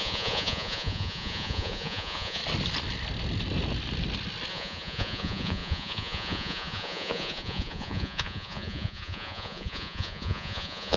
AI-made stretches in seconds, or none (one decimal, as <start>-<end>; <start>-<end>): 0.0-2.4; 4.5-11.0